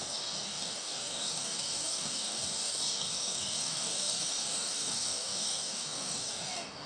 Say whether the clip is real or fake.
fake